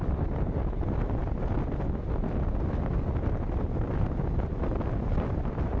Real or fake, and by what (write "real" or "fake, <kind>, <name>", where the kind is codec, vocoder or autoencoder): real